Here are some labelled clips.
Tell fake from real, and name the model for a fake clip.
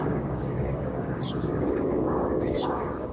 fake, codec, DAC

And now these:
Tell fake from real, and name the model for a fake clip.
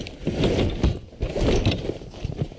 real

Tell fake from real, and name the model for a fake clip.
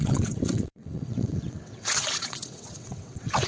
fake, vocoder, WaveNeXt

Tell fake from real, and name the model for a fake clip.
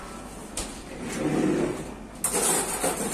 real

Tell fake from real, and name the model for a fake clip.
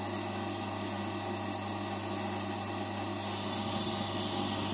real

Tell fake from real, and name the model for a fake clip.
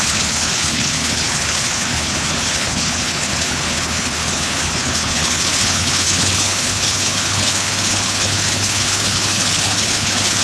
fake, codec, HILCodec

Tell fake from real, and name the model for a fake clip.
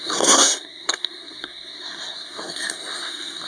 fake, codec, SNAC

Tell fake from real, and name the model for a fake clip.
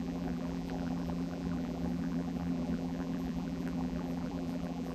fake, vocoder, BigVGAN v2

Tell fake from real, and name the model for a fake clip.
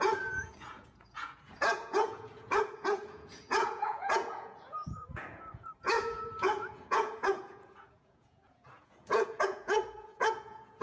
fake, vocoder, Vocos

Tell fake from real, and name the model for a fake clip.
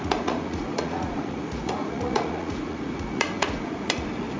fake, vocoder, Vocos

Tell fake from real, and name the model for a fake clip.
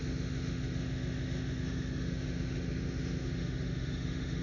fake, autoencoder, DAC-VAE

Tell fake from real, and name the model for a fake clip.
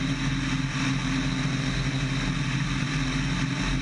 real